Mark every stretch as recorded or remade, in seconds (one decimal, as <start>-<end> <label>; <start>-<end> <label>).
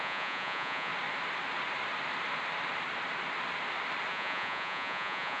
0.0-0.9 remade; 0.9-4.1 recorded; 4.1-5.4 remade